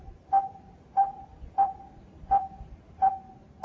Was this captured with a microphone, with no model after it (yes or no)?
no